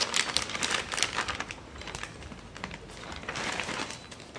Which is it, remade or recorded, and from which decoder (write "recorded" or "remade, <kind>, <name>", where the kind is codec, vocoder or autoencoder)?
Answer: recorded